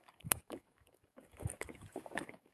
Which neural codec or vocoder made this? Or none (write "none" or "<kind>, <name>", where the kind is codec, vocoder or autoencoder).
codec, DAC